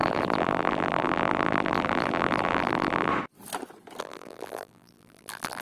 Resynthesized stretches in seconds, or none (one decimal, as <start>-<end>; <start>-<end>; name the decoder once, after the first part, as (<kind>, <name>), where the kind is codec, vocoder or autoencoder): 0.0-3.1 (vocoder, BigVGAN v2); 4.0-5.6